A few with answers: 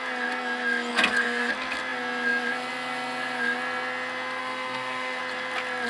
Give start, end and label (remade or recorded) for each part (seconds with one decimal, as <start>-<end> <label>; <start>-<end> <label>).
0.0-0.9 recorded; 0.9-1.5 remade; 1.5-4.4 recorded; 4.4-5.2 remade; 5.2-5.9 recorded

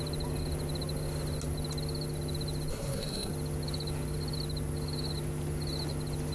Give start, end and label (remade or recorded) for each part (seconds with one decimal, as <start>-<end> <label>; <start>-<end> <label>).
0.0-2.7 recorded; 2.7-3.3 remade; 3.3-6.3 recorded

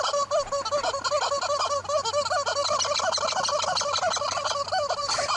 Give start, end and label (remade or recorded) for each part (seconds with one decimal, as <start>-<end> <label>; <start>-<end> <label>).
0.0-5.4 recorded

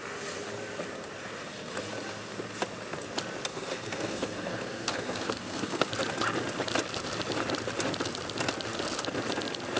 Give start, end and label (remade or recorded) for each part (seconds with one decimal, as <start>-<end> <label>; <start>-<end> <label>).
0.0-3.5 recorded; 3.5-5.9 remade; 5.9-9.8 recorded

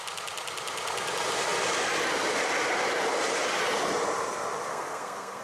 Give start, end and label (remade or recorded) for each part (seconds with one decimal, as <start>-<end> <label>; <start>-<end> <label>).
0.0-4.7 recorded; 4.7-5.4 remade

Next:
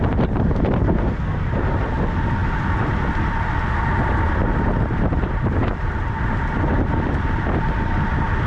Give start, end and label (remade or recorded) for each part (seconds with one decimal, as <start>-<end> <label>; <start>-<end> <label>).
0.0-0.8 recorded; 0.8-1.5 remade; 1.5-8.5 recorded

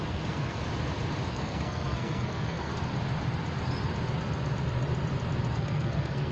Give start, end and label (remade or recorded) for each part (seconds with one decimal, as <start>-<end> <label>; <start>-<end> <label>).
0.0-0.6 remade; 0.6-1.3 recorded; 1.3-2.7 remade; 2.7-5.5 recorded; 5.5-6.3 remade

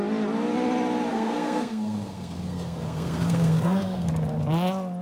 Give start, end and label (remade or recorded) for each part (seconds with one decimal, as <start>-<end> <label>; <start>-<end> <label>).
0.0-1.1 recorded; 1.1-4.1 remade; 4.1-5.0 recorded